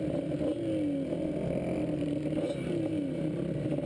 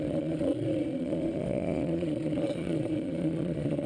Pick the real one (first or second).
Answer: first